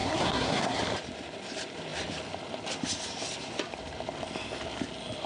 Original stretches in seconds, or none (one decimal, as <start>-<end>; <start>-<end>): 0.8-5.3